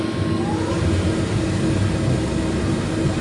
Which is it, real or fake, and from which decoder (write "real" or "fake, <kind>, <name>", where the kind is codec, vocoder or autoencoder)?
real